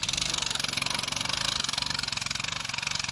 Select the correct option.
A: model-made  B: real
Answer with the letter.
B